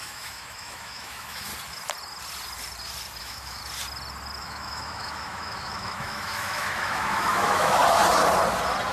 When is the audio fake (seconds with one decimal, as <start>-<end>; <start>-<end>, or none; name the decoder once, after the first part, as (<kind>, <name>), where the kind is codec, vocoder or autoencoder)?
0.0-1.5 (autoencoder, DAC-VAE); 3.2-3.6; 4.4-7.8